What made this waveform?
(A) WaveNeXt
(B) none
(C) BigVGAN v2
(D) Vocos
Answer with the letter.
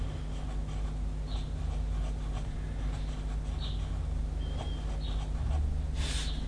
B